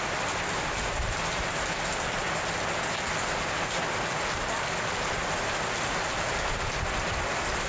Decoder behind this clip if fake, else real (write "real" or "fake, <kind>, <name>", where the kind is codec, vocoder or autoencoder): real